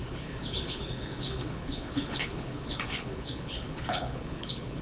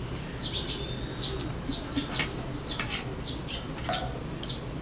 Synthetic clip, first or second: first